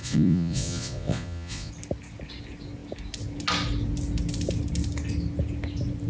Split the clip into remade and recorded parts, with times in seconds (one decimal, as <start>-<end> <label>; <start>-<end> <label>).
0.0-1.7 remade; 1.7-6.1 recorded